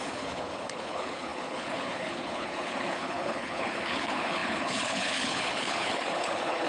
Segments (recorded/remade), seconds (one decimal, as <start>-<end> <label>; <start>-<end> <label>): 0.0-6.7 remade